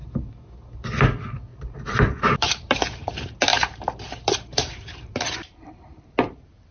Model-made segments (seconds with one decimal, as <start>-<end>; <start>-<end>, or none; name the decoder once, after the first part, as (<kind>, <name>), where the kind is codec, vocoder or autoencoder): 1.5-3.1 (vocoder, BigVGAN v2); 3.5-6.1